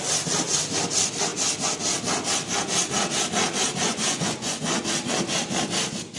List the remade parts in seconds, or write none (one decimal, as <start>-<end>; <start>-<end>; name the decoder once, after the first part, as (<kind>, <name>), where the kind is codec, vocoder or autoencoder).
3.8-4.8 (vocoder, Vocos)